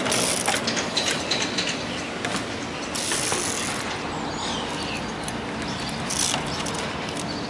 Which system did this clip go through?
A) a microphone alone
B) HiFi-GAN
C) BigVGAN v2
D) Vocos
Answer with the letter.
A